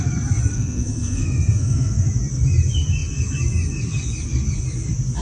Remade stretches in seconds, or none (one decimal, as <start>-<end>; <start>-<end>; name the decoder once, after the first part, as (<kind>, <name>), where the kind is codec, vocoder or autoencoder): 0.5-2.0 (codec, SNAC)